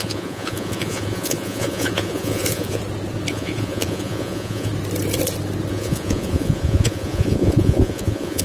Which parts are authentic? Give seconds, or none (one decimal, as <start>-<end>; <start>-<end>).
2.8-3.3; 4.7-5.7